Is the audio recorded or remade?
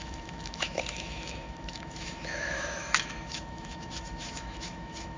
remade